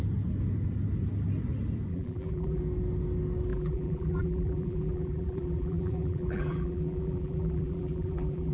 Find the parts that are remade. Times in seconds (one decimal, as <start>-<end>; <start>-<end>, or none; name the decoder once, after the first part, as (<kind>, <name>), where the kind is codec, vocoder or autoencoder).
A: 1.9-2.6 (vocoder, BigVGAN v2); 3.5-8.5